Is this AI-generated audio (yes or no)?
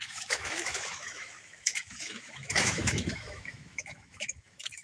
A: yes